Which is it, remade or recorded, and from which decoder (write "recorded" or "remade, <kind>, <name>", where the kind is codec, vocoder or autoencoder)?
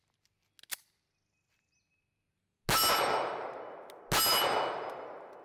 recorded